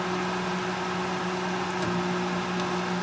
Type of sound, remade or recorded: recorded